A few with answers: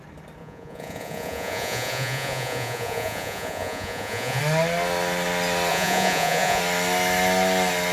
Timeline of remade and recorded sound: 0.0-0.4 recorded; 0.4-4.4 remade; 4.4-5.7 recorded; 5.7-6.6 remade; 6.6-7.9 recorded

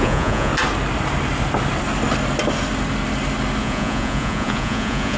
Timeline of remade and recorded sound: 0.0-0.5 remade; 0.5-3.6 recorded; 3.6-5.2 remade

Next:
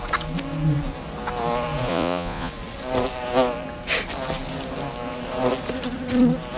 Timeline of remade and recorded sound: 0.0-1.9 recorded; 1.9-2.5 remade; 2.5-6.6 recorded